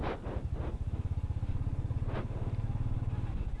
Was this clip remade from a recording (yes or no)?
no